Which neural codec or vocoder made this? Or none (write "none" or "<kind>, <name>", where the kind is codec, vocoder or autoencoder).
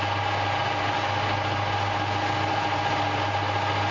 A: none